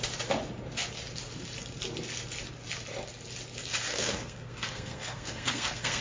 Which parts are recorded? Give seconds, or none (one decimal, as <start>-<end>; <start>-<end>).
0.0-3.9